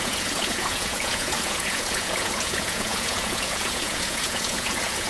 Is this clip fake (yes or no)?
yes